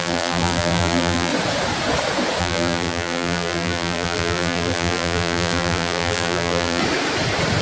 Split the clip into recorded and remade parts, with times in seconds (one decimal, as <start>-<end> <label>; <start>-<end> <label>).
0.0-1.3 remade; 1.3-2.4 recorded; 2.4-6.8 remade; 6.8-7.6 recorded